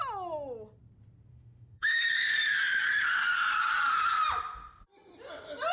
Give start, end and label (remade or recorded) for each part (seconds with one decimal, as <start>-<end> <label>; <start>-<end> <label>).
0.0-1.3 recorded; 1.3-2.0 remade; 2.0-5.7 recorded